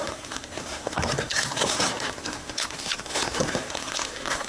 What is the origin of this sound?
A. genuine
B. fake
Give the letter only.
B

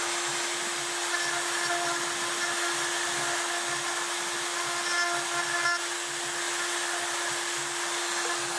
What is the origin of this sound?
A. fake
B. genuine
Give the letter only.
B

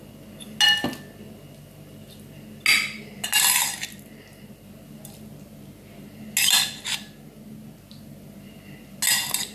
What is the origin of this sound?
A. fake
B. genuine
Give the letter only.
B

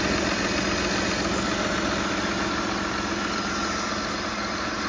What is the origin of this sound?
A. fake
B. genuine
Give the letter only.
B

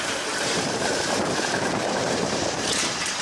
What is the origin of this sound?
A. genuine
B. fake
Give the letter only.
B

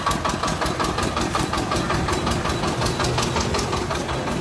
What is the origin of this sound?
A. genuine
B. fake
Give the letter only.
A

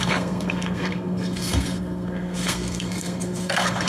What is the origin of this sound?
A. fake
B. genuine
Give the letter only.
A